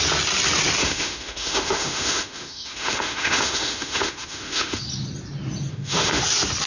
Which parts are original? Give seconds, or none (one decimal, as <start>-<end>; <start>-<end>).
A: 0.0-0.8; 4.8-5.7; 6.2-6.7